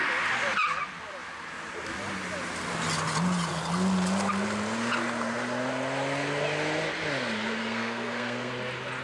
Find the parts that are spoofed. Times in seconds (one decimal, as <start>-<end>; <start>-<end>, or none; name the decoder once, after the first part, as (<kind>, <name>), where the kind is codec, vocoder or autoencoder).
7.6-8.5 (codec, SNAC)